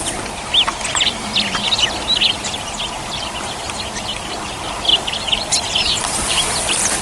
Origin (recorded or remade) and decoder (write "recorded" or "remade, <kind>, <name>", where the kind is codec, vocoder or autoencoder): recorded